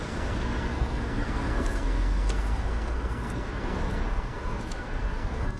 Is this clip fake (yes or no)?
yes